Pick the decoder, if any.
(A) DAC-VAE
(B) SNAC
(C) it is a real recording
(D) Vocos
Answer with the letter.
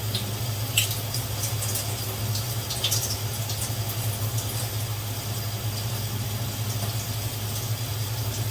C